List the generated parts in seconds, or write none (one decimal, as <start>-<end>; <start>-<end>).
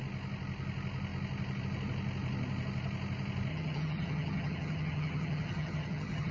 3.5-6.3